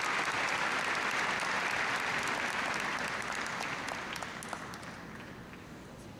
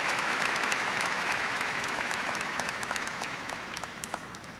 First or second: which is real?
first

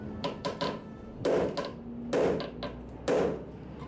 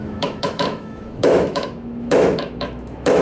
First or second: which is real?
first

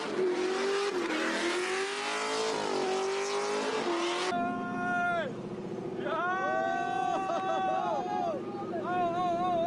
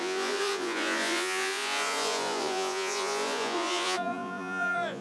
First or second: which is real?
first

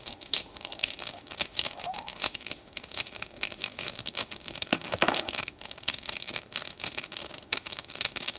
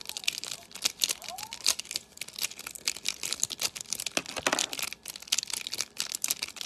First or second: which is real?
second